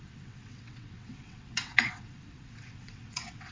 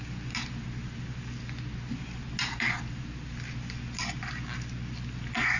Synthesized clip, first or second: first